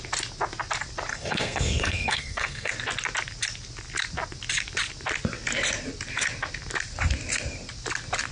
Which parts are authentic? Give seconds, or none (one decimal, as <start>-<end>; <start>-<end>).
0.0-1.1; 2.7-8.3